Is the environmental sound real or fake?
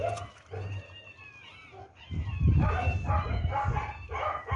real